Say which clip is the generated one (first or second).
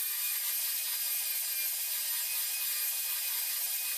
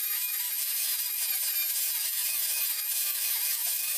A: second